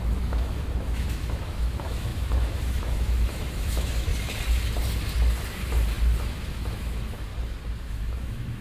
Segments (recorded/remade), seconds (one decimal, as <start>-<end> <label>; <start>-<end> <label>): 0.0-4.1 remade; 4.1-6.2 recorded; 6.2-7.3 remade; 7.3-7.9 recorded; 7.9-8.6 remade